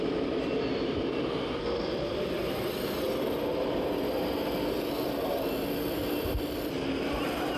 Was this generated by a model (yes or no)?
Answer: no